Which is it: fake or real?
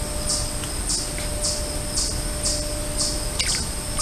real